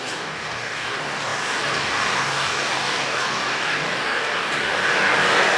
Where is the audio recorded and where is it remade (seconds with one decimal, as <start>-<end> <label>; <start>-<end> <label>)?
0.0-5.6 remade